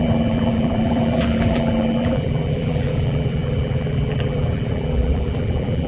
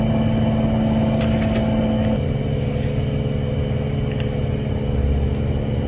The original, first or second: second